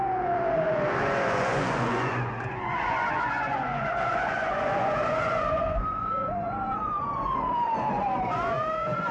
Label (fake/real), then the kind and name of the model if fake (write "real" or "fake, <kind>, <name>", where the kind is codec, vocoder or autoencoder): fake, vocoder, Vocos